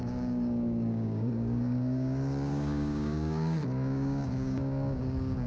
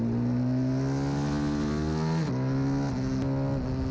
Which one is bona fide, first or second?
second